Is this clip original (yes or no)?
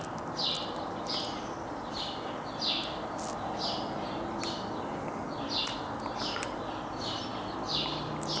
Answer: yes